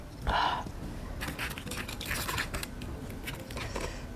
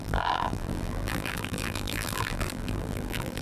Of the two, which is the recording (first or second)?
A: first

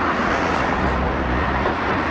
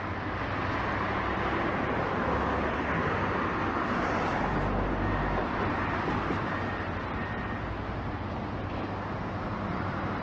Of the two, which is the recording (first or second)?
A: second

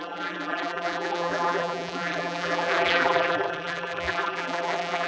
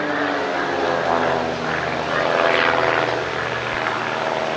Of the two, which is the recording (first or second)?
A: second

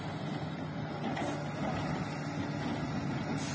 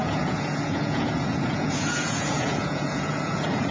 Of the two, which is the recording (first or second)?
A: first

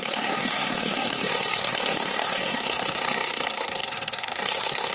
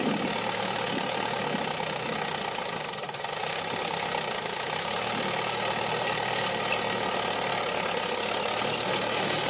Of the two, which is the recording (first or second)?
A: second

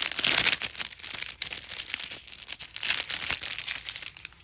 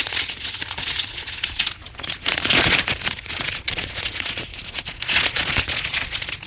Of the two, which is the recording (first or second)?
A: first